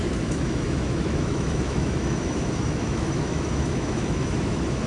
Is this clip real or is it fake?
fake